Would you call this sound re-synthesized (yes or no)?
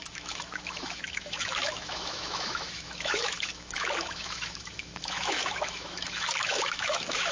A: yes